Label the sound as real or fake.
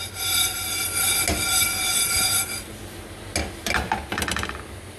real